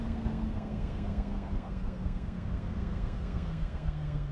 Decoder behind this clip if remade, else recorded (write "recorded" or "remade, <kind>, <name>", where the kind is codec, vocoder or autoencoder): remade, codec, SNAC